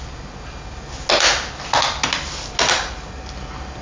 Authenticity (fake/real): real